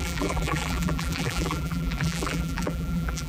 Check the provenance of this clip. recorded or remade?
remade